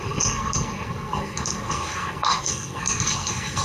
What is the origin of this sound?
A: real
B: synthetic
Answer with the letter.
B